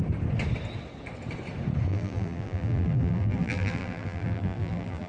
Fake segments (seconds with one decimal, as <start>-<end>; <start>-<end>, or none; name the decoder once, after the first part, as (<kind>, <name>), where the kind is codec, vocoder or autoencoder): 1.9-5.1 (vocoder, BigVGAN v2)